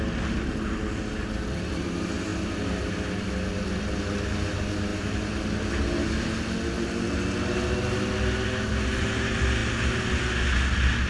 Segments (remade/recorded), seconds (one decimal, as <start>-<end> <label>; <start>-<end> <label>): 0.0-11.1 recorded